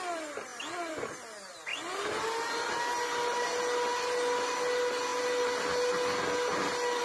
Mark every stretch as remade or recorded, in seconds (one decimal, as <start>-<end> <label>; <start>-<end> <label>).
0.0-7.0 recorded